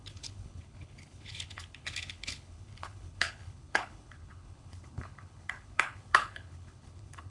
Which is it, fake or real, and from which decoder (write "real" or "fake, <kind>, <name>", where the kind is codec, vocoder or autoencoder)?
fake, codec, HILCodec